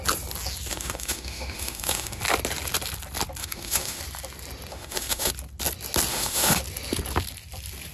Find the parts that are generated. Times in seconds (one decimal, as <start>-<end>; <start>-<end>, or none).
0.7-2.2; 3.4-4.0; 4.7-5.3; 6.1-6.6